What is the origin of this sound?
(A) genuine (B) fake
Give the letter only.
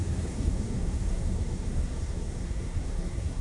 B